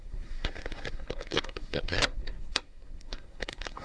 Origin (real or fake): fake